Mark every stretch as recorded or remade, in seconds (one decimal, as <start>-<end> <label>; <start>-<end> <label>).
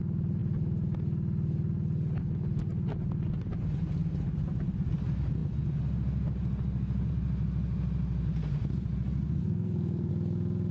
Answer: 0.0-9.4 recorded; 9.4-10.1 remade; 10.1-10.7 recorded